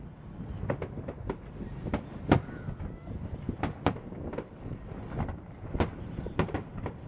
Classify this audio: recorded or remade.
recorded